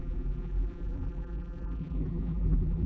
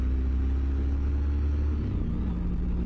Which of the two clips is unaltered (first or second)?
second